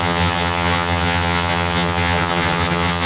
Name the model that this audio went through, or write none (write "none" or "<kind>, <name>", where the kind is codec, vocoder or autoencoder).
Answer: vocoder, HiFi-GAN